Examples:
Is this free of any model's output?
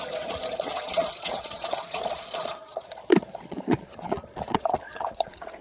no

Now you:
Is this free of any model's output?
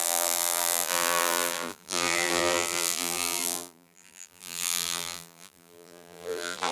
no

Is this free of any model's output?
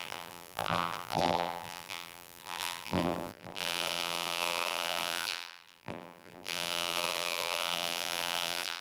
no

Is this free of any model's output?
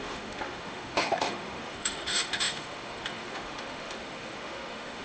no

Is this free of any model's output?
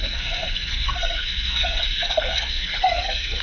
no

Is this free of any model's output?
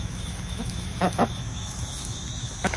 no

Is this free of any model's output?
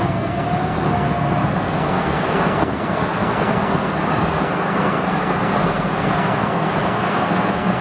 no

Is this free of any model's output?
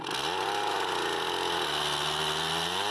yes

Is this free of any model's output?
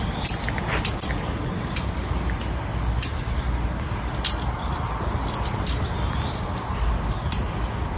yes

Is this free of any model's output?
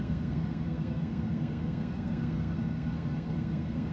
no